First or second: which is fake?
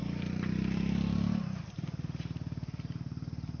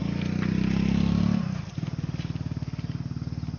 first